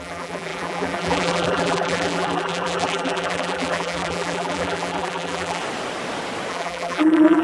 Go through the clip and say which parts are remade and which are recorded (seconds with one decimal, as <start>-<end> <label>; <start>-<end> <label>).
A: 0.0-5.6 remade; 5.6-6.5 recorded; 6.5-7.4 remade